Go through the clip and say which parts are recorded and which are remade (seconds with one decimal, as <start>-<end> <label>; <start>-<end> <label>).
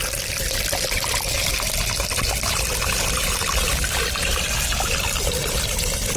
0.0-6.2 recorded